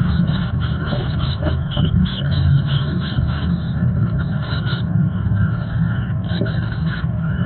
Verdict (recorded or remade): remade